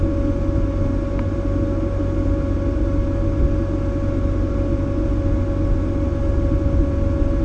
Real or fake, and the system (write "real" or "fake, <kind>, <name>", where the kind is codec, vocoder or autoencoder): real